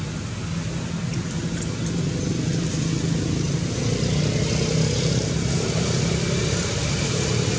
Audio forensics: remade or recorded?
recorded